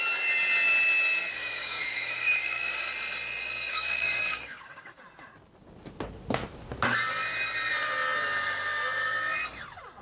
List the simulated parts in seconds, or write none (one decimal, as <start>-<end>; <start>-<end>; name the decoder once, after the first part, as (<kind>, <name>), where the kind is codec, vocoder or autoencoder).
1.3-2.8 (codec, DAC); 3.7-5.0